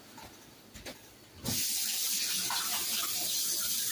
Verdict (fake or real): real